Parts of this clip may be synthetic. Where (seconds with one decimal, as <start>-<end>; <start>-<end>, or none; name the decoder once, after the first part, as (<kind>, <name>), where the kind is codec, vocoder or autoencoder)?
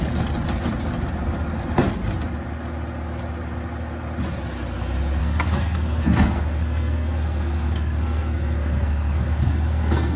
5.2-10.2 (codec, SNAC)